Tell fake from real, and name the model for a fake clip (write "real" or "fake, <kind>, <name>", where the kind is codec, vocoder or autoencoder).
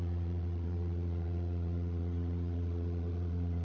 fake, vocoder, Vocos